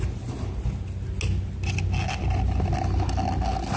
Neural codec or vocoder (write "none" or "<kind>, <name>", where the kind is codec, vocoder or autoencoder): none